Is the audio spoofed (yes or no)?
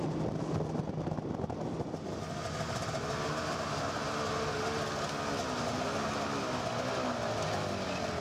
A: no